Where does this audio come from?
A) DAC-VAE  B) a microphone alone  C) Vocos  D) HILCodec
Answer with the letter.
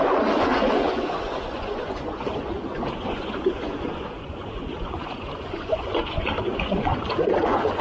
C